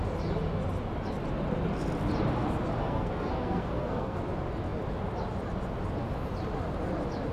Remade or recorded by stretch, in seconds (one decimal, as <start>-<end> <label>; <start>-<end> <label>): 0.0-2.8 recorded; 2.8-4.2 remade; 4.2-7.3 recorded